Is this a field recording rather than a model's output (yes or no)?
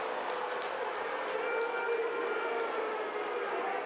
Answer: yes